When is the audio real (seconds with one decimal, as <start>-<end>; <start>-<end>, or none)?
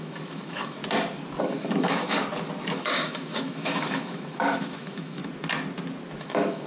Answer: 0.8-1.4; 2.2-2.8; 5.2-6.2